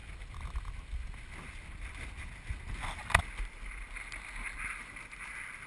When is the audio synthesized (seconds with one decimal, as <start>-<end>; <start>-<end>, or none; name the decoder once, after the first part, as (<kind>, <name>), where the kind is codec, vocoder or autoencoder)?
none